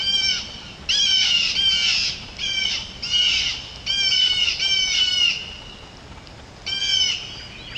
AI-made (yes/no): no